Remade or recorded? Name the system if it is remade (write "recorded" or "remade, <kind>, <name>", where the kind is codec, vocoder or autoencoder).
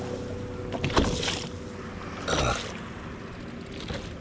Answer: recorded